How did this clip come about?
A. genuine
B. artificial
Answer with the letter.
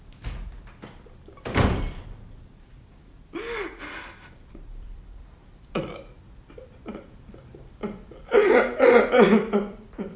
B